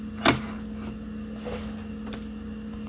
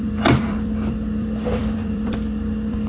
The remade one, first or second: second